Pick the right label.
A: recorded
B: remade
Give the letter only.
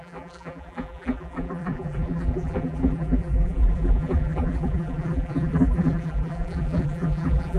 B